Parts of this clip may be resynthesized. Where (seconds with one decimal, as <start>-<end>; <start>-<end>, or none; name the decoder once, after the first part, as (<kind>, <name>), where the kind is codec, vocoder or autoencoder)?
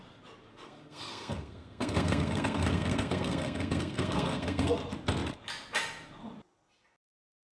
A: 0.5-4.8 (codec, SNAC)